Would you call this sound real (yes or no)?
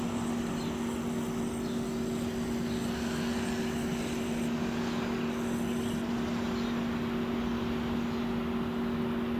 yes